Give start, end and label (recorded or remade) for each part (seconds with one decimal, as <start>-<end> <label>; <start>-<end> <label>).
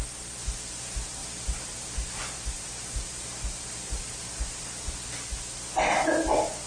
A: 0.0-1.2 recorded; 1.2-4.9 remade; 4.9-6.7 recorded